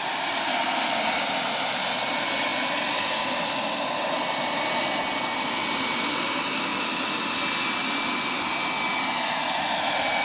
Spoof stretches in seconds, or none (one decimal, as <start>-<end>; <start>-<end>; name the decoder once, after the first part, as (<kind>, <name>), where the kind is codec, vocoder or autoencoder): none